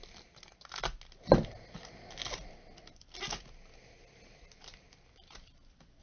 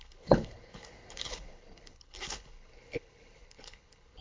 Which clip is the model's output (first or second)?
second